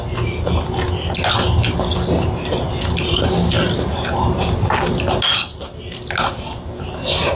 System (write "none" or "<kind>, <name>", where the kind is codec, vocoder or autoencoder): none